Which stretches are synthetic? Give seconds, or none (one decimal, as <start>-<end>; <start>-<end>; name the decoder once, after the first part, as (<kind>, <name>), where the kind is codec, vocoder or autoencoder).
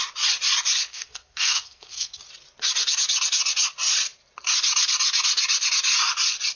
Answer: 0.9-2.2 (codec, SNAC)